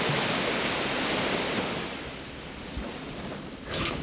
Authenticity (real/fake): real